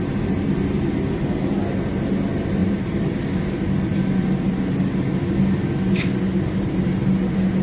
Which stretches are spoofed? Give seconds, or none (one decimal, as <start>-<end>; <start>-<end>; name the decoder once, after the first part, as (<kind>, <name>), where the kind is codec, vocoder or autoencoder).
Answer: none